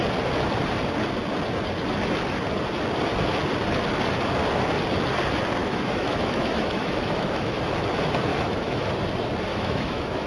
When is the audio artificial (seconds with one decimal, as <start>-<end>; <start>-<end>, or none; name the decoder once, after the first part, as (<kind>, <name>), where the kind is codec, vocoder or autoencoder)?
5.6-7.6 (autoencoder, DAC-VAE); 8.3-8.9; 9.5-10.3